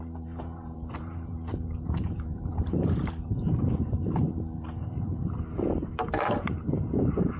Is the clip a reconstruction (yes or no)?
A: yes